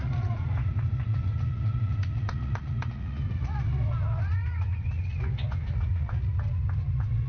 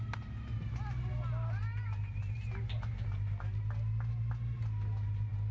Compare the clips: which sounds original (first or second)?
second